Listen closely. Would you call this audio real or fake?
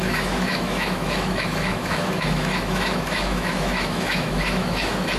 fake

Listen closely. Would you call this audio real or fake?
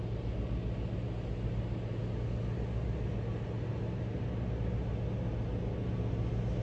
real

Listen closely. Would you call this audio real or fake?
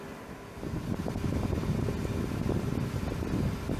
real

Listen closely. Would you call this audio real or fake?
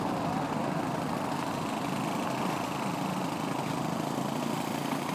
real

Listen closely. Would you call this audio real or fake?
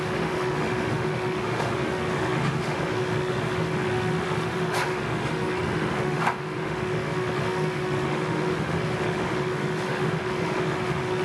fake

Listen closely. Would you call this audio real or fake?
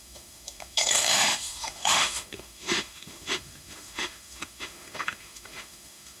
fake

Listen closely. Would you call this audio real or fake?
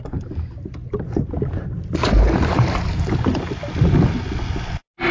real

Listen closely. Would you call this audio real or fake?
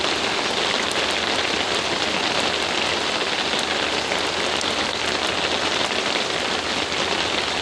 real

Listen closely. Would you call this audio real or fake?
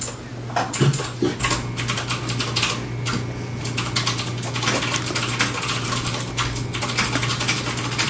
real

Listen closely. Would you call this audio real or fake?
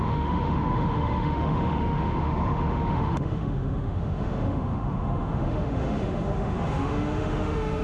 fake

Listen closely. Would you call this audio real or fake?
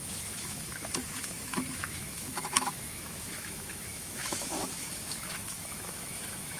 fake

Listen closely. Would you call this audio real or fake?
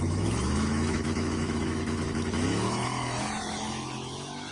fake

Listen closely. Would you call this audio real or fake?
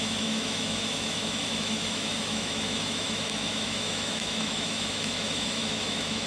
fake